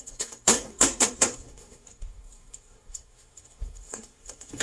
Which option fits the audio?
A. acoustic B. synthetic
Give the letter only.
B